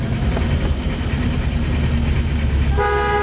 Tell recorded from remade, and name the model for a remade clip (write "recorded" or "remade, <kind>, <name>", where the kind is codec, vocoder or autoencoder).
recorded